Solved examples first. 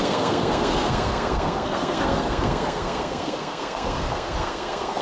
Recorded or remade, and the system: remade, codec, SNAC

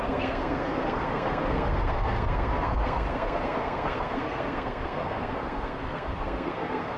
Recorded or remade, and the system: remade, codec, SNAC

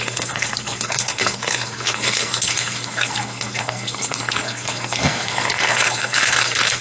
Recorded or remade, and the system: remade, codec, SNAC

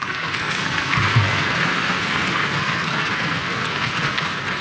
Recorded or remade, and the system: remade, codec, SNAC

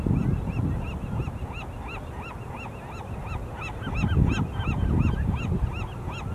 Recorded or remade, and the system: recorded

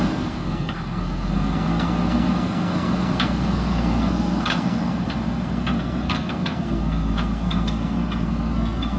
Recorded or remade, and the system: remade, codec, SNAC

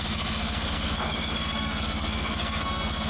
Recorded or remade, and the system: remade, codec, SNAC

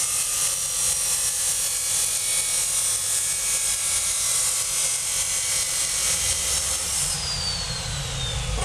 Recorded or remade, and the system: recorded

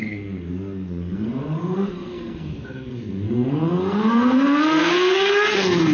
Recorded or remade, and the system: remade, codec, SNAC